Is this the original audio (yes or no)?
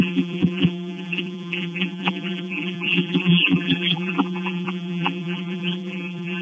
no